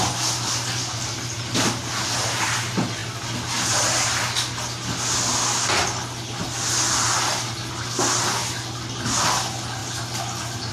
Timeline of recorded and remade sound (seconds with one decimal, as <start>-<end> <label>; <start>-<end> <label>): 0.0-10.7 recorded